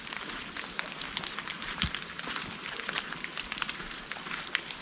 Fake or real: fake